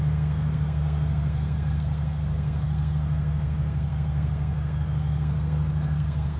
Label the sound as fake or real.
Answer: fake